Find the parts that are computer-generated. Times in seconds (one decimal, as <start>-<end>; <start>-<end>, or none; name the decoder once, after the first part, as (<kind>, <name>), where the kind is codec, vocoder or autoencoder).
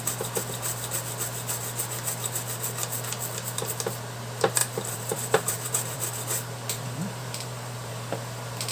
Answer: 4.6-7.9 (vocoder, BigVGAN v2)